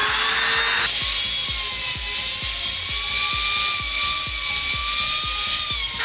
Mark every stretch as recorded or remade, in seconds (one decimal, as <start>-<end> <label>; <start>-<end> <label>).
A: 0.0-6.0 recorded